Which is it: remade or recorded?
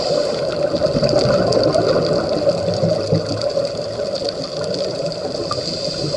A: recorded